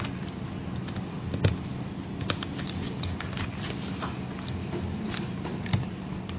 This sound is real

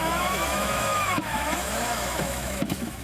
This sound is fake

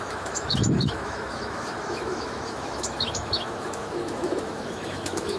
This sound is fake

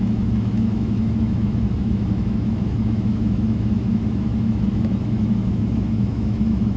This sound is fake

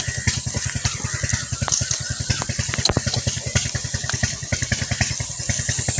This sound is real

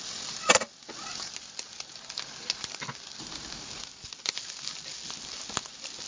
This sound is real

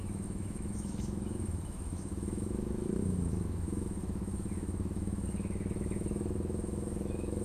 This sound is fake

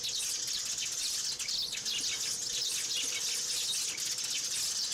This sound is real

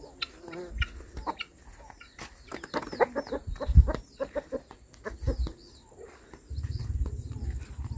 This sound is real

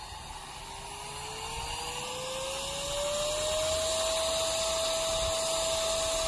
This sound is real